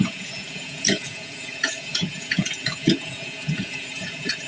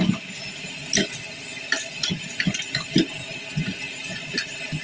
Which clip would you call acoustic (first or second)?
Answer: second